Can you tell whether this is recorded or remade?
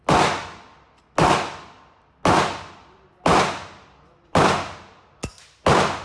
recorded